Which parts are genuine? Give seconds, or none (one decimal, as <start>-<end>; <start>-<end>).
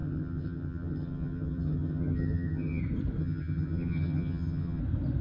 2.8-3.2; 4.8-5.2